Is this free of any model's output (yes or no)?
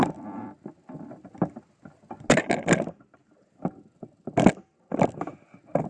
yes